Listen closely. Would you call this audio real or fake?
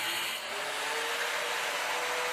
real